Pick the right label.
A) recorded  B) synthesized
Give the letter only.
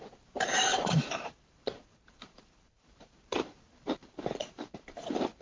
B